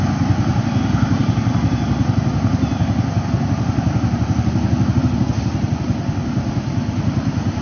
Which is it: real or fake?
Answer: real